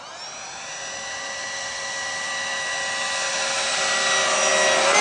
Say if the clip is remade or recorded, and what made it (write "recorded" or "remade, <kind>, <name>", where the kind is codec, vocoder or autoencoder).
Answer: recorded